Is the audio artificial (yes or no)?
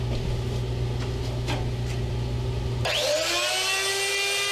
no